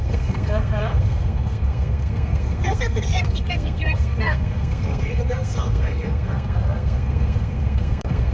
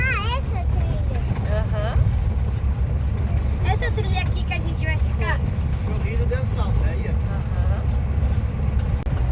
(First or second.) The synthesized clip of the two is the first